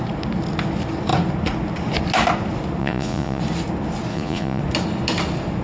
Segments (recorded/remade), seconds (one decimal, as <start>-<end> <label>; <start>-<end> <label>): 0.0-2.8 recorded; 2.8-3.4 remade; 3.4-4.1 recorded; 4.1-4.6 remade; 4.6-5.6 recorded